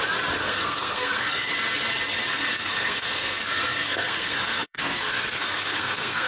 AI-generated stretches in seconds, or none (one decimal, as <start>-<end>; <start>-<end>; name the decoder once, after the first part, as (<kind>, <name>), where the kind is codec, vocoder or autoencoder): 0.4-1.5 (codec, SNAC); 2.3-6.3